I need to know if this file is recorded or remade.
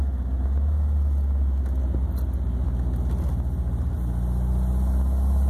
recorded